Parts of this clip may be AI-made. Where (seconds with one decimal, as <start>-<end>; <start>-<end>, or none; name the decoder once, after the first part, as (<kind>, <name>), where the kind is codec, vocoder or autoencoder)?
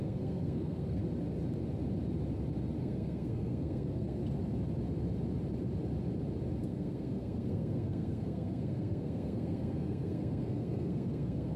0.0-1.0 (codec, SNAC); 2.8-4.2; 6.6-11.6